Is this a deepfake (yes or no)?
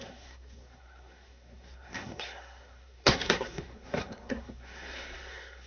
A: yes